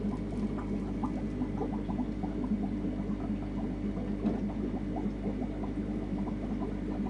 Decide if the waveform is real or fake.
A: real